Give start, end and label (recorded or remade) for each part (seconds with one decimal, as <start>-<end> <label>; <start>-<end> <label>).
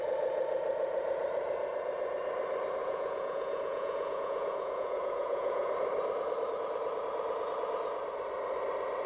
0.0-2.8 recorded; 2.8-5.7 remade; 5.7-9.1 recorded